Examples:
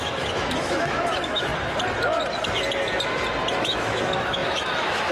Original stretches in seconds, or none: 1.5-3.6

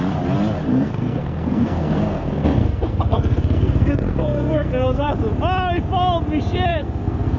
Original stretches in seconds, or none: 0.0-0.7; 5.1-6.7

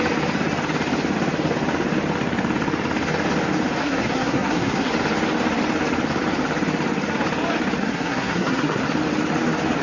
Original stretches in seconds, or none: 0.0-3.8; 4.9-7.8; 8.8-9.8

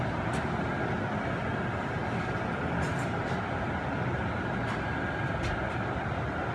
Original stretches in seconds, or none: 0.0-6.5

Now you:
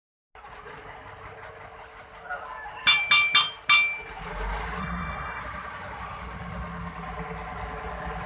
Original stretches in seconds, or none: 0.0-4.8; 5.4-8.3